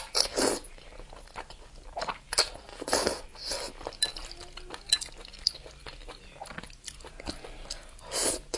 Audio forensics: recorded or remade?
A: recorded